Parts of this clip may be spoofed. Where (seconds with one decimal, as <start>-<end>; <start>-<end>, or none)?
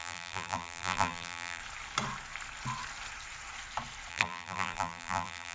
0.0-1.6; 4.1-5.5